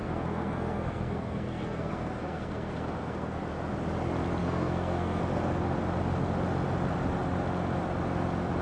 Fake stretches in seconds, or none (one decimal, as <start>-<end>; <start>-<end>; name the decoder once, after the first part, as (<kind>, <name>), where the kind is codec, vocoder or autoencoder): 0.0-3.4 (codec, SNAC); 4.4-5.2